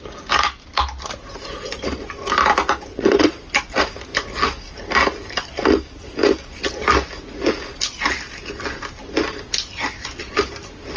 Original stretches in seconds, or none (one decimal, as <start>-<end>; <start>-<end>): 0.0-2.9; 3.4-11.0